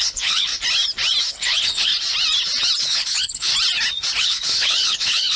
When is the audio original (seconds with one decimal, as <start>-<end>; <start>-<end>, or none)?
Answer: 0.5-1.3; 1.9-2.8; 3.5-4.2